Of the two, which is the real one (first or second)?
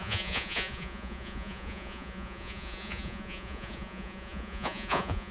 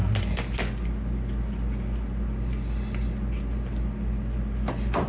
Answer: second